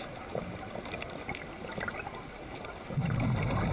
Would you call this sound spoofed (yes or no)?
no